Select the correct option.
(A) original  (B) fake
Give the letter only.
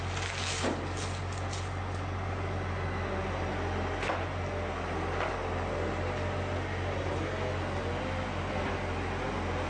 A